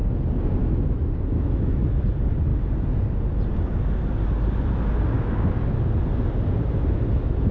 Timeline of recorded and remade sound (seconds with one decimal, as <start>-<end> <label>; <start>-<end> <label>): 0.0-0.6 recorded; 0.6-1.8 remade; 1.8-7.5 recorded